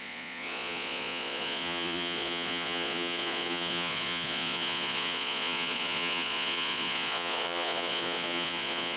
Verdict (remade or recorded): remade